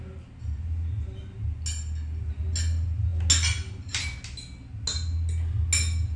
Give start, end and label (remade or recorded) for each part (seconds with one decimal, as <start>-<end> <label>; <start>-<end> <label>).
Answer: 0.0-6.2 recorded